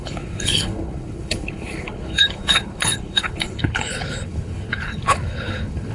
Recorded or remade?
remade